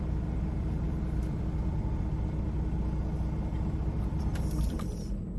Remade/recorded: remade